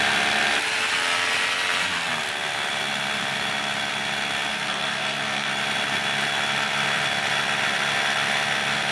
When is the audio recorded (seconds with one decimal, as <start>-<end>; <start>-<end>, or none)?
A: 0.0-4.5; 5.5-8.9